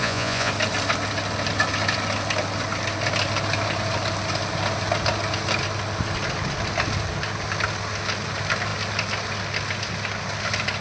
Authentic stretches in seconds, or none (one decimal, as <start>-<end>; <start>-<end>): 0.5-10.8